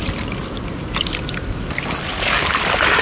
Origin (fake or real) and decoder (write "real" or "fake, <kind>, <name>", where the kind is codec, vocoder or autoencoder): real